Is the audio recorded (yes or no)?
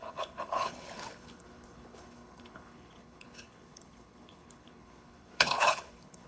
no